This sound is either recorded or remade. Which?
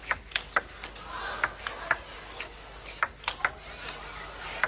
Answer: recorded